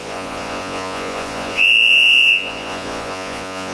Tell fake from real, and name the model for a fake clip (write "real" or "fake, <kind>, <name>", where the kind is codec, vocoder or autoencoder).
fake, vocoder, Vocos